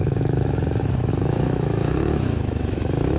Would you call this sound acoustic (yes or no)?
no